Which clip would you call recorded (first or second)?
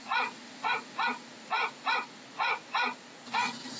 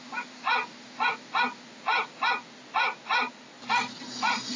second